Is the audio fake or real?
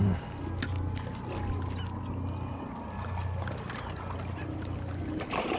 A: real